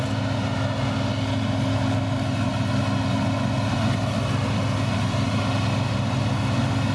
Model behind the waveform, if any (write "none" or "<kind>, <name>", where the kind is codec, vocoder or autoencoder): none